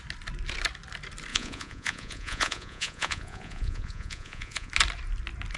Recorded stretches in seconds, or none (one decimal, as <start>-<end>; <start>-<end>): 0.0-1.3; 4.7-5.6